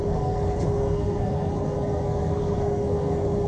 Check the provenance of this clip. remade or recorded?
remade